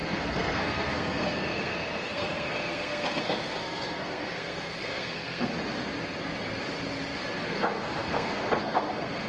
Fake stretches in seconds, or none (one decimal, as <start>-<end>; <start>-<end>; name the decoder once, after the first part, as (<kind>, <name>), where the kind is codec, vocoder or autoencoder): 0.0-5.5 (codec, SNAC); 7.4-9.3